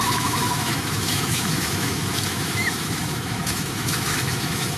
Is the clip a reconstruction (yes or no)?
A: yes